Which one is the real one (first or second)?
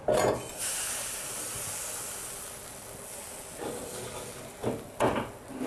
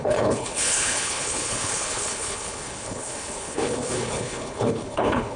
first